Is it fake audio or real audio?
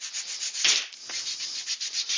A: real